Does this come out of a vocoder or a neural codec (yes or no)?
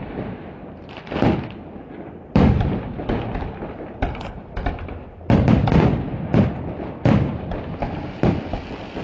no